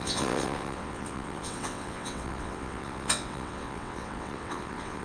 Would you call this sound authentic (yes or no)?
no